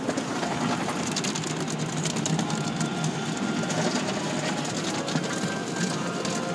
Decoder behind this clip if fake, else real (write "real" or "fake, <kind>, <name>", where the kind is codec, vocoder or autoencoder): real